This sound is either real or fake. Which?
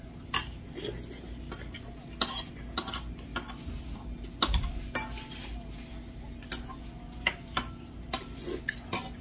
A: real